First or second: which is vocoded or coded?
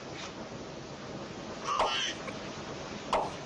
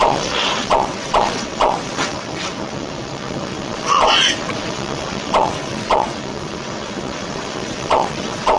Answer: second